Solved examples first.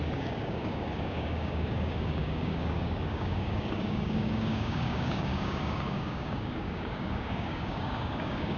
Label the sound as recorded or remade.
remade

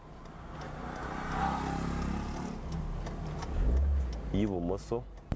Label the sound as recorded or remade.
recorded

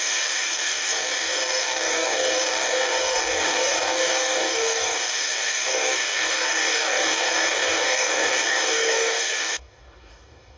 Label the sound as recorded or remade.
remade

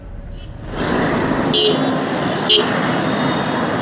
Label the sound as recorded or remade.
recorded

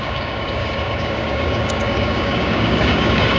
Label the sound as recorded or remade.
remade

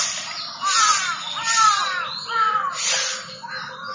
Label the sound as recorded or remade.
recorded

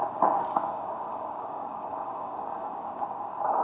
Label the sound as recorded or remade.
remade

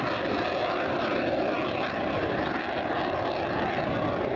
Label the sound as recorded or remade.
recorded